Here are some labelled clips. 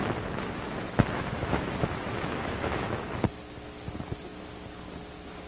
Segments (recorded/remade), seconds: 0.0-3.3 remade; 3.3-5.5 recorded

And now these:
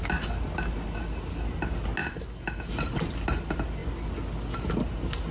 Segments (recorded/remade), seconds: 0.0-2.0 recorded; 2.0-2.7 remade; 2.7-5.3 recorded